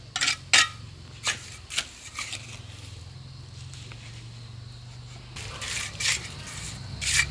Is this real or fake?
real